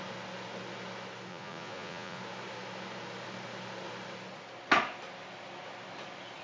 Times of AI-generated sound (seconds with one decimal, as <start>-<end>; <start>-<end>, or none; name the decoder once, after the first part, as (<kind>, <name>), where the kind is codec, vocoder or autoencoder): 1.3-2.2 (vocoder, Vocos)